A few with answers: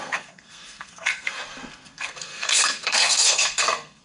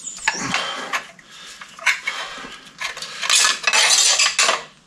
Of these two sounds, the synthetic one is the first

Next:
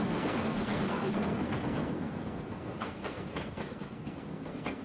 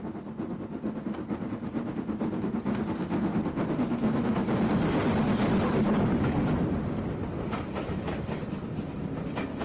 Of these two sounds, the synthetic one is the first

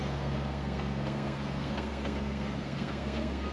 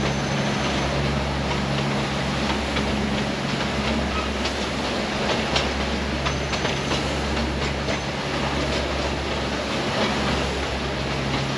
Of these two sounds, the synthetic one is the first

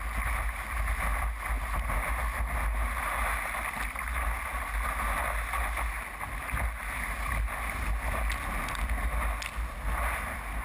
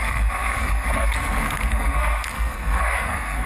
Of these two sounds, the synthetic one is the second